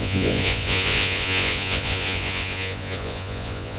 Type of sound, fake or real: fake